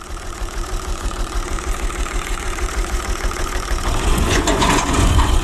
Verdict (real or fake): fake